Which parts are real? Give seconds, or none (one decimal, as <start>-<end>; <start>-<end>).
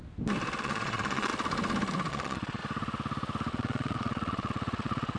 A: 0.0-0.6; 1.3-2.1; 2.6-3.5